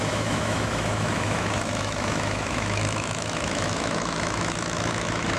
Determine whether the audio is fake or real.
fake